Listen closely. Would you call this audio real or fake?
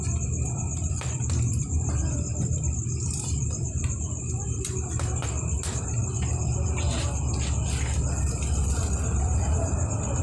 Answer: real